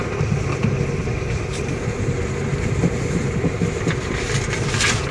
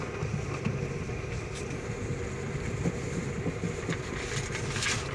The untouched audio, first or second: second